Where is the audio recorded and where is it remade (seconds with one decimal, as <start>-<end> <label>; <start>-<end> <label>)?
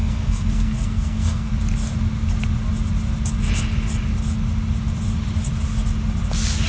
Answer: 0.0-1.5 remade; 1.5-6.7 recorded